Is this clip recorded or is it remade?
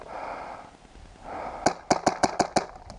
recorded